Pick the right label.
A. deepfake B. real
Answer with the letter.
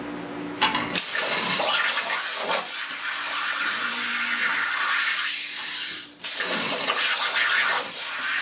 B